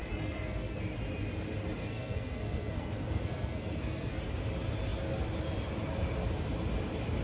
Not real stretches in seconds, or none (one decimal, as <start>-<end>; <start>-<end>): 0.0-0.8; 1.8-4.2